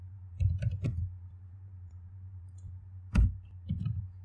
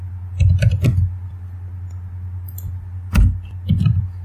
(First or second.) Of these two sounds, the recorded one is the second